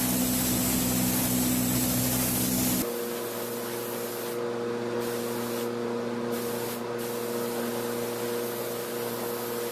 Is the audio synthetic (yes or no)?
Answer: no